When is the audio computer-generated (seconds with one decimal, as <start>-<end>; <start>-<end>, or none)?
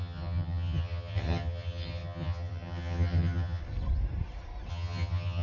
0.0-3.6; 4.7-5.4